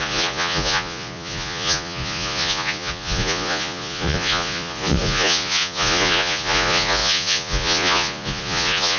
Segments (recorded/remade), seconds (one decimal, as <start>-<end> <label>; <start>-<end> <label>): 0.0-9.0 remade